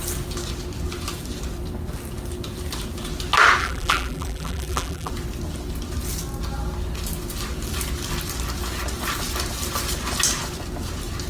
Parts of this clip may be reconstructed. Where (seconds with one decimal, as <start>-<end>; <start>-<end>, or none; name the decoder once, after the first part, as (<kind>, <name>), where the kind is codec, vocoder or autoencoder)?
3.6-5.1 (vocoder, BigVGAN v2)